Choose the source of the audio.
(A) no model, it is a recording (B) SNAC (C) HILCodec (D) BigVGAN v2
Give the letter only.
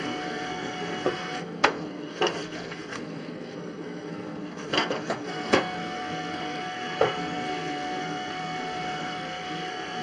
B